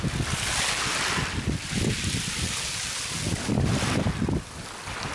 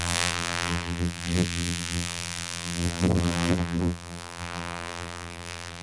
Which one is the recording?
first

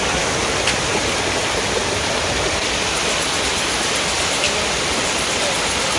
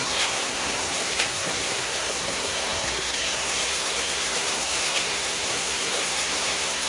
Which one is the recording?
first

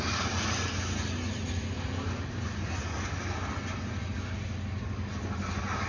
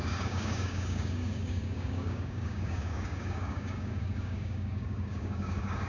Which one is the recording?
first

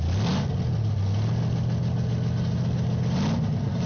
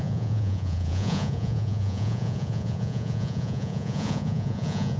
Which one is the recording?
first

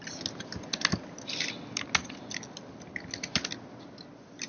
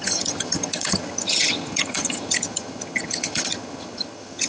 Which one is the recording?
first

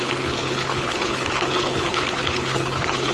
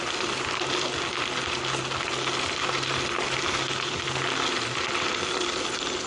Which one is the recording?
second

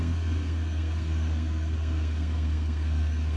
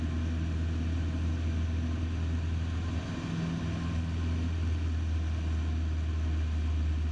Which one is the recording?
second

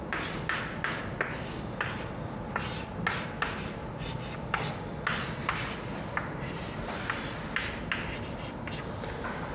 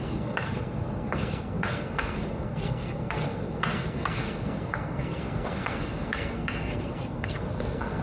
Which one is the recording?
first